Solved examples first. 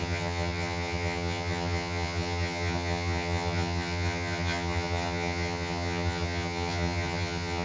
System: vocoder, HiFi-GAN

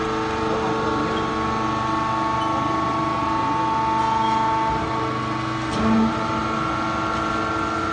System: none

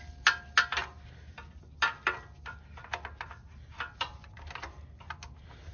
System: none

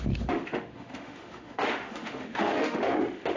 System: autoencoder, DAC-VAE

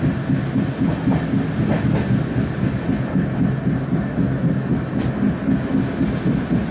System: none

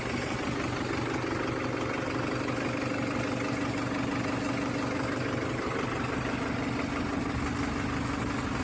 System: none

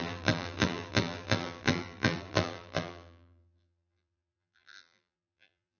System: vocoder, BigVGAN v2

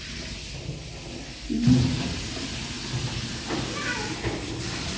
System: none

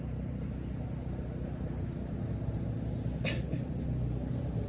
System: none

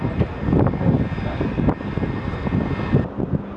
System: none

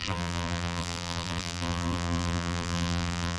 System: vocoder, BigVGAN v2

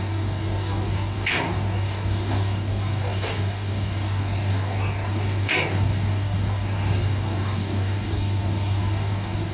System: codec, DAC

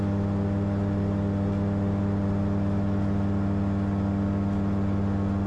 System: none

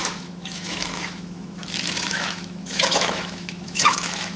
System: autoencoder, DAC-VAE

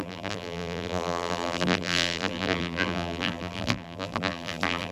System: vocoder, BigVGAN v2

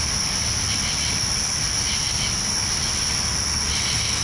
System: none